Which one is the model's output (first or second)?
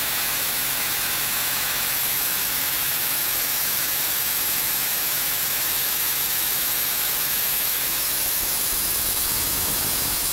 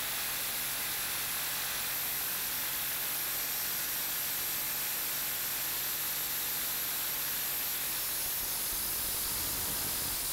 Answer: first